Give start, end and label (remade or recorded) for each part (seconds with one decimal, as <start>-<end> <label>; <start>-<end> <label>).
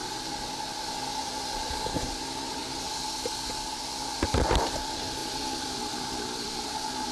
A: 0.0-2.2 recorded; 2.2-2.6 remade; 2.6-3.5 recorded; 3.5-5.2 remade; 5.2-5.7 recorded; 5.7-7.1 remade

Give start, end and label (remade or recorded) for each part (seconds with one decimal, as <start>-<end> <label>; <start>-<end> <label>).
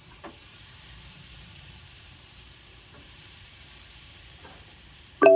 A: 0.0-5.4 remade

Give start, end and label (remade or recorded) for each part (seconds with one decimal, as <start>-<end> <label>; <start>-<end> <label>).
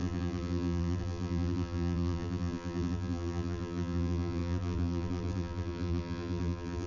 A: 0.0-6.9 remade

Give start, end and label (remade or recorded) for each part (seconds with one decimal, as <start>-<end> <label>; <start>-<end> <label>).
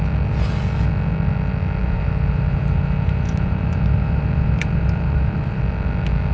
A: 0.0-1.8 recorded; 1.8-5.6 remade; 5.6-6.3 recorded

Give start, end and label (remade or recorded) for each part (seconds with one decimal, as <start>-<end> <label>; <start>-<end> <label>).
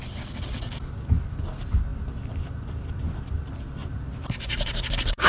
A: 0.0-3.8 recorded; 3.8-5.3 remade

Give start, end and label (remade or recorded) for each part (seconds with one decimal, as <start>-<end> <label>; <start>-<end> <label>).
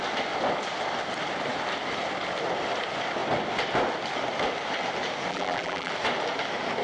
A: 0.0-5.3 recorded; 5.3-5.9 remade; 5.9-6.8 recorded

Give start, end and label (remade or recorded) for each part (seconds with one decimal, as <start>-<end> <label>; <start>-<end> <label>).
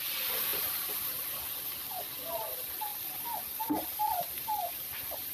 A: 0.0-5.3 recorded